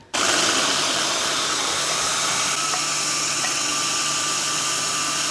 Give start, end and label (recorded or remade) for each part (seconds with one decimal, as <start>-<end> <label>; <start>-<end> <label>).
0.0-3.2 recorded; 3.2-3.7 remade; 3.7-5.3 recorded